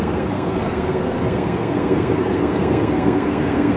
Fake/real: fake